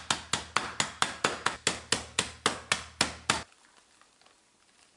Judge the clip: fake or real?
real